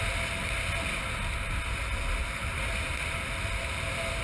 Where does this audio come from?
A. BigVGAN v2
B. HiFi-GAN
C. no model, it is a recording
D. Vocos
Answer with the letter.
C